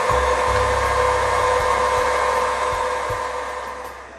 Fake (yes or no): no